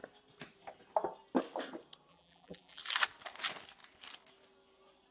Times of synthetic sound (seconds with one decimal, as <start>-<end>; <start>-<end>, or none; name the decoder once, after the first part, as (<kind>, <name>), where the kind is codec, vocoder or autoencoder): 2.1-2.8 (vocoder, BigVGAN v2)